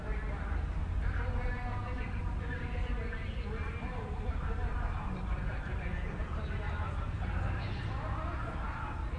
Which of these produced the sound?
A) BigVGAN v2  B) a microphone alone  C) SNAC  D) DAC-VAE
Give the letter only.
B